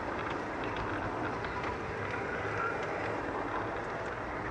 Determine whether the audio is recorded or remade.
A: recorded